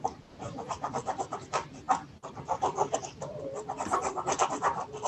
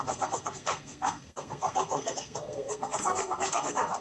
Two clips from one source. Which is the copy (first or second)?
second